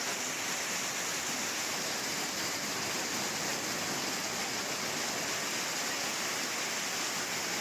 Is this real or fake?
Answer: real